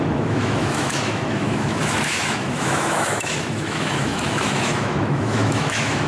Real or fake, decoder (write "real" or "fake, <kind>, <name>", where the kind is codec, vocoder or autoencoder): fake, autoencoder, DAC-VAE